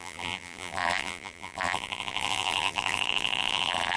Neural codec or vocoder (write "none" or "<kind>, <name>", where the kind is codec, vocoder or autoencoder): vocoder, BigVGAN v2